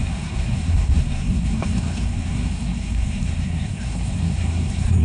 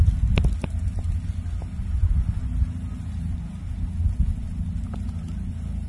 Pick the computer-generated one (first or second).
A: first